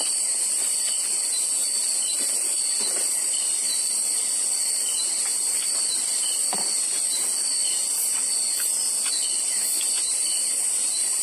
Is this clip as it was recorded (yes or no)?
yes